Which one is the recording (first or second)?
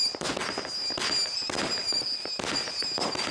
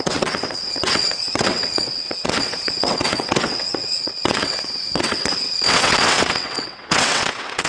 first